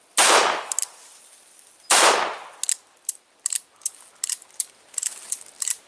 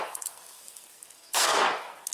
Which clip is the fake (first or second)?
second